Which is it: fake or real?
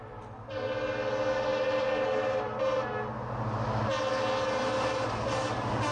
real